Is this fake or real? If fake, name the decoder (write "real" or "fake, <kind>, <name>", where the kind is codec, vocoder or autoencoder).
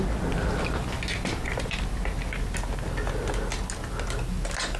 real